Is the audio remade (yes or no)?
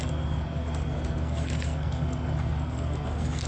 yes